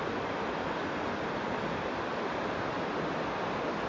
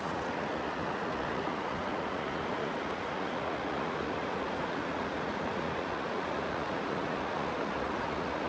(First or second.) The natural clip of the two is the first